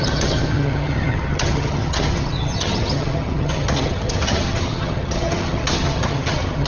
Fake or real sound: fake